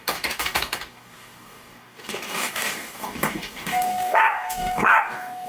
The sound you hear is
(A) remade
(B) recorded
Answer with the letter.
A